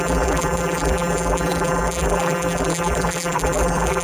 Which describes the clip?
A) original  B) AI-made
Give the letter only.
B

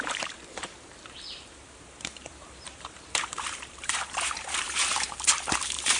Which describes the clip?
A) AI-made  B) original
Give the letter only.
A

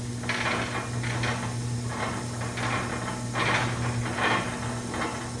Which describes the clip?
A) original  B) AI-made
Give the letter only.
A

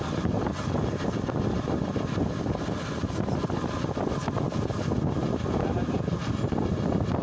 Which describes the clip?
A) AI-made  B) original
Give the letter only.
B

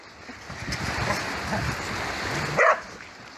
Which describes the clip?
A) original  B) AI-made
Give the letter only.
A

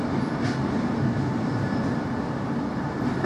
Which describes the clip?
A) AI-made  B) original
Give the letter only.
B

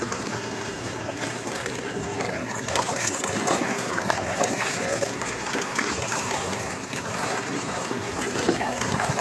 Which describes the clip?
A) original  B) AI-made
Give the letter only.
B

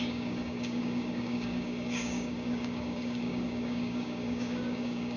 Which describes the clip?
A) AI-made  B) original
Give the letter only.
A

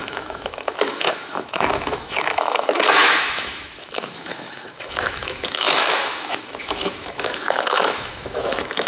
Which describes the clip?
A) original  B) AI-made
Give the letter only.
B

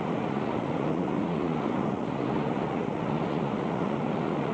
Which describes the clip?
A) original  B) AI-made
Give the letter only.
B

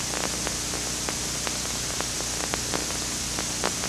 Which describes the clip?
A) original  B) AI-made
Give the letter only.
A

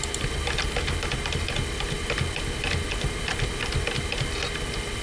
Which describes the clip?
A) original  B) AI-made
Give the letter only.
A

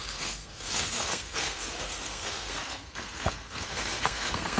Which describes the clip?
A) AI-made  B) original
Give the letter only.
A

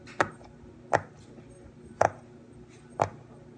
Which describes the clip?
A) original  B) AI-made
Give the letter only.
A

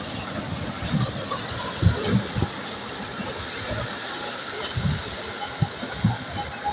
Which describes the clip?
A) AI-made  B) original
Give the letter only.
B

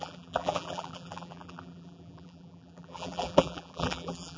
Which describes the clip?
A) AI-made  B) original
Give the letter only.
A